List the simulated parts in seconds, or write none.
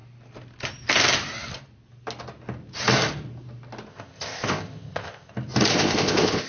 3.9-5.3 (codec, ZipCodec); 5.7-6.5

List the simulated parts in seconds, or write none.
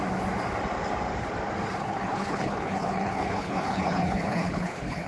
1.8-5.1 (codec, HILCodec)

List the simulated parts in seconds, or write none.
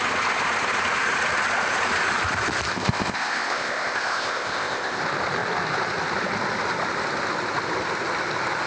2.7-5.0 (codec, ZipCodec)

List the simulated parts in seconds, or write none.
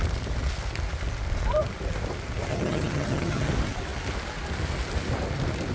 2.5-3.5 (vocoder, HiFi-GAN)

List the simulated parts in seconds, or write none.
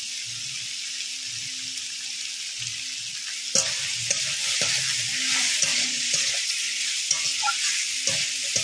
5.7-6.9 (vocoder, Vocos)